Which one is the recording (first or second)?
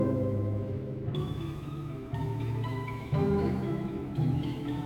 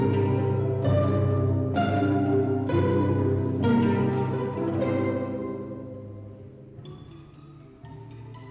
second